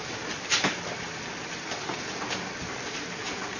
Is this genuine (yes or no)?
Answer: yes